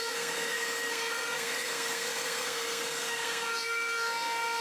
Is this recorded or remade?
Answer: remade